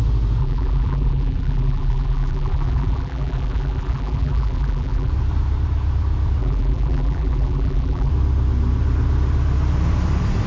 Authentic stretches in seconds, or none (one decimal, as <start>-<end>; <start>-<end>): 0.0-0.4; 5.1-6.4; 8.1-10.5